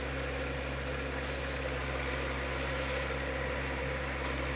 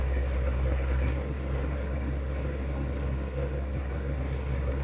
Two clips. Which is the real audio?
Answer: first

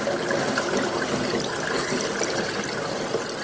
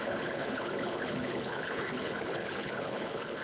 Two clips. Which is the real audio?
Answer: first